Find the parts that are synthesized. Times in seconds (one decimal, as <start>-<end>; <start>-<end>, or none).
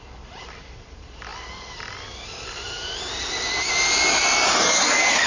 none